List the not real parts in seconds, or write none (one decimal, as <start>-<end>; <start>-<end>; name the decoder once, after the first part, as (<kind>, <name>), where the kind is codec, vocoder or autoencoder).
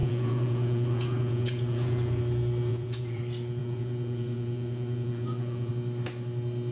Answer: 0.0-2.2 (vocoder, Vocos); 2.7-3.2; 3.6-5.7